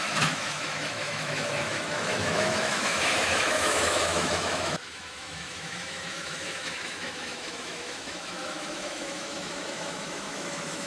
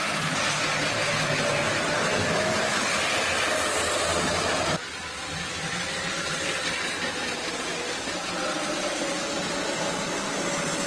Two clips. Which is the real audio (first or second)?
second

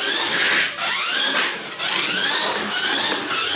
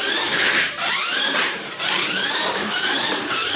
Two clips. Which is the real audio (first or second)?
first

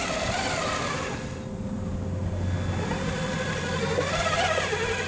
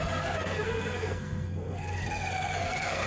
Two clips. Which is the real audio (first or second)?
first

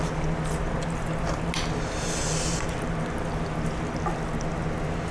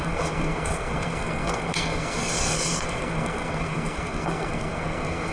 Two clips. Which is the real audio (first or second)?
first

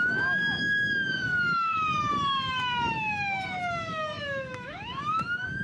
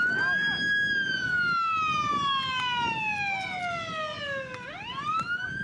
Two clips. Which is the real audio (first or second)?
second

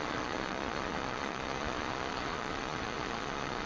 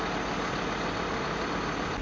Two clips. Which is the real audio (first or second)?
second